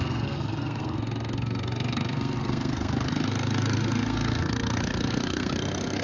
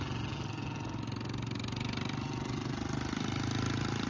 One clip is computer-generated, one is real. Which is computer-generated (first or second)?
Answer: first